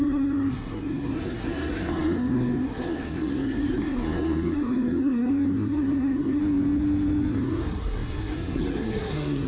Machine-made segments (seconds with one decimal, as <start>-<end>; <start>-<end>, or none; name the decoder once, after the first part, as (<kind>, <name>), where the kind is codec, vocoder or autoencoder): 0.0-6.4 (codec, SNAC); 7.3-9.5